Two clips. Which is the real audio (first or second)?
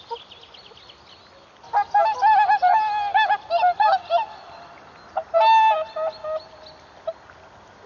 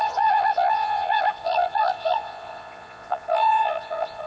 first